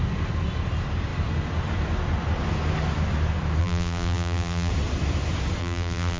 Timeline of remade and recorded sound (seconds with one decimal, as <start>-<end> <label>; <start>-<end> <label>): 0.0-3.6 recorded; 3.6-4.7 remade; 4.7-5.6 recorded; 5.6-6.2 remade